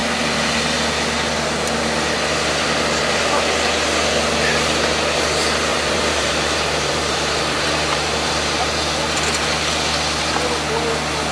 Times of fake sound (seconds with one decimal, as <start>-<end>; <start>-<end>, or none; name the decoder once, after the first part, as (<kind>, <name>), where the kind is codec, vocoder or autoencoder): 5.7-8.6 (vocoder, BigVGAN v2)